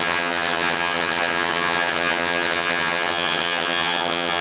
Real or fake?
fake